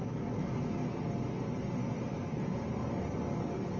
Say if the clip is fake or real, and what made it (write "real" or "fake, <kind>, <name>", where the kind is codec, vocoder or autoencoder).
real